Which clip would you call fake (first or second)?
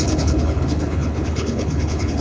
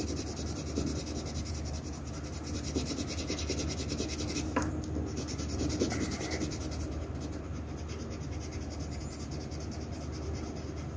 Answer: first